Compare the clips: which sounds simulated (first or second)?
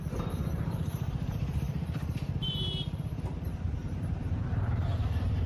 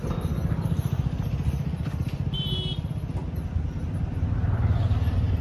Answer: first